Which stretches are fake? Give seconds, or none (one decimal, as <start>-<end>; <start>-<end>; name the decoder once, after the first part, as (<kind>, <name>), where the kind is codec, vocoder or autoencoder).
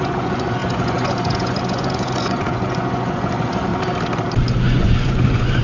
0.0-3.7 (vocoder, Vocos); 4.6-5.6